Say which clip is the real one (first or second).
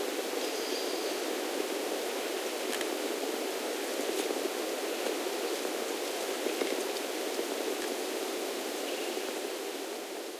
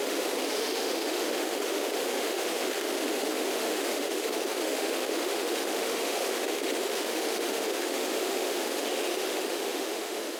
first